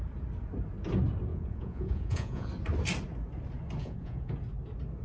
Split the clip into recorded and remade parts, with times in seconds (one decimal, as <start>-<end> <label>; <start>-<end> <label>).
0.0-1.3 recorded; 1.3-2.5 remade; 2.5-3.8 recorded; 3.8-4.3 remade; 4.3-5.0 recorded